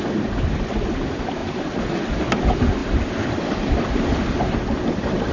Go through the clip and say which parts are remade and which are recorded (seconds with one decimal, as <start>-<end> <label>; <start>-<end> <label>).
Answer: 0.0-5.3 recorded